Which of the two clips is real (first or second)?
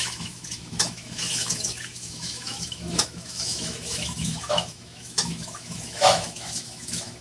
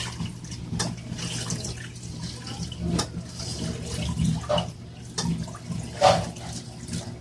second